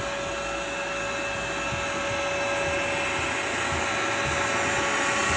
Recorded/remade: recorded